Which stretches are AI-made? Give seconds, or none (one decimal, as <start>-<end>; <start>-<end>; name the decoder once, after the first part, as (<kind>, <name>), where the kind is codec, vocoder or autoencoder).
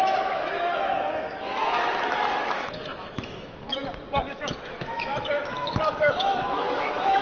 0.0-3.8 (autoencoder, DAC-VAE); 4.3-7.2